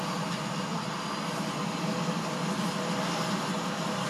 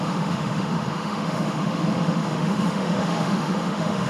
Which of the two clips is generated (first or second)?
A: second